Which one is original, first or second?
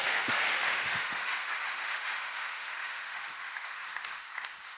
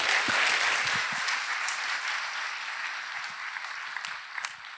second